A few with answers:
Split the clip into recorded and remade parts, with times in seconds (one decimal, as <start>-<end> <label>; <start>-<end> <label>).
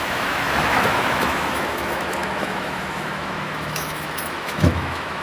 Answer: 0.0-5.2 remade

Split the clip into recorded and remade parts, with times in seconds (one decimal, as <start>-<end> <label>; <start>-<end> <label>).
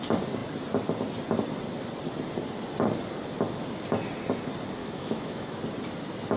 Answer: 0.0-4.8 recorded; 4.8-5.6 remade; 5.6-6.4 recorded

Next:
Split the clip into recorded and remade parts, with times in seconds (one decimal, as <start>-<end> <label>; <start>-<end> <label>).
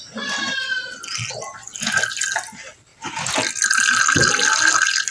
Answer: 0.0-5.1 recorded